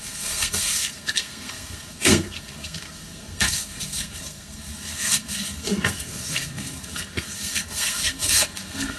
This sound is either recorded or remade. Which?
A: remade